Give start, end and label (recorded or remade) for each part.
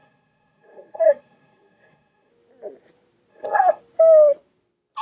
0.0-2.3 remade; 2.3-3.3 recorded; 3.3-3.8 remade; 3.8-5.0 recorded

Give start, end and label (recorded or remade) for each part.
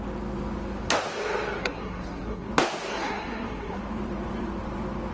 0.0-1.6 recorded; 1.6-2.5 remade; 2.5-2.9 recorded; 2.9-3.8 remade; 3.8-5.1 recorded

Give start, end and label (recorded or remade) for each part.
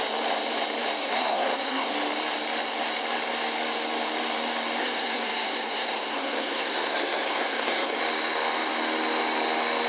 0.0-1.0 recorded; 1.0-1.9 remade; 1.9-4.8 recorded; 4.8-8.0 remade; 8.0-9.9 recorded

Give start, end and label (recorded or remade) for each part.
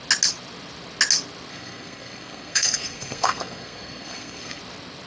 0.0-1.5 recorded; 1.5-4.6 remade; 4.6-5.1 recorded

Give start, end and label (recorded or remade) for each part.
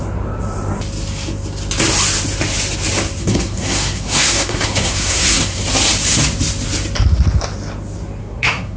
0.0-3.2 recorded; 3.2-5.6 remade; 5.6-8.2 recorded; 8.2-8.8 remade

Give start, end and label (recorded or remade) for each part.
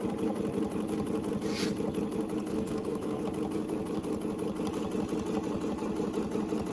0.0-2.5 recorded; 2.5-3.2 remade; 3.2-6.7 recorded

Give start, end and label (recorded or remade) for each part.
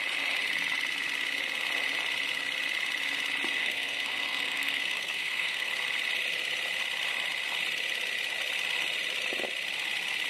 0.0-3.6 recorded; 3.6-5.7 remade; 5.7-10.3 recorded